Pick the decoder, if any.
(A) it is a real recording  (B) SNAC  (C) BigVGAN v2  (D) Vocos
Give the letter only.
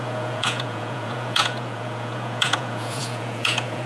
D